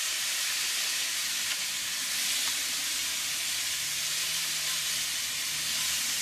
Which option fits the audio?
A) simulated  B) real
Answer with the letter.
B